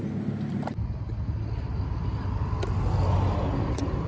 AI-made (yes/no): no